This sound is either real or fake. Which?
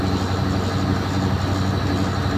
real